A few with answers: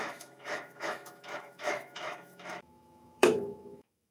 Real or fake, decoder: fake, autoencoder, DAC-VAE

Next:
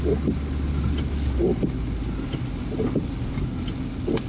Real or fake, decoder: real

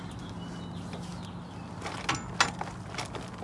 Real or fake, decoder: real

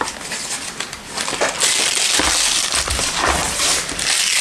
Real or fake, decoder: real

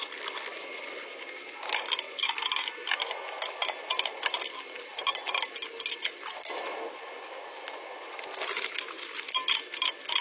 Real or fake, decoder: real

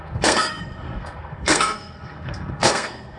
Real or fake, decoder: fake, codec, SNAC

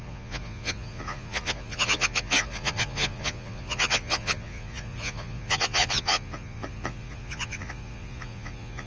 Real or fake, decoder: fake, vocoder, Vocos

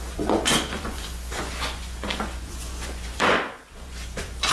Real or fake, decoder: fake, vocoder, Vocos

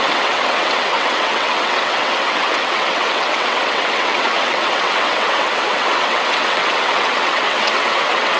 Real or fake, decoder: fake, vocoder, WaveNeXt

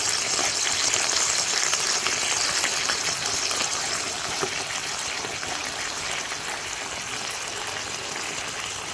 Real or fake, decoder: real